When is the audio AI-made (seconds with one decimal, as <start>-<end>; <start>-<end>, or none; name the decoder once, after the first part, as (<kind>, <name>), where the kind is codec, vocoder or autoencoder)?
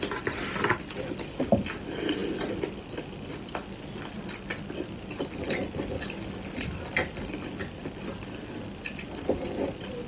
none